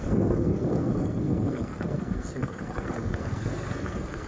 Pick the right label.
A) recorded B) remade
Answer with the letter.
B